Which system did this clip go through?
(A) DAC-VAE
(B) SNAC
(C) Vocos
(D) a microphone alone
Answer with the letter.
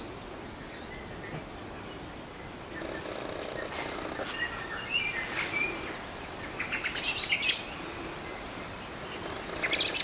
D